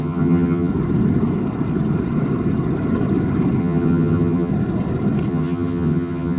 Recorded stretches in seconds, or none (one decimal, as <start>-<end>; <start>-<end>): 0.7-3.6; 4.5-5.3